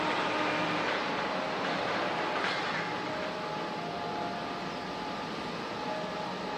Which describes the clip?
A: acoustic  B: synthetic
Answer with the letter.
A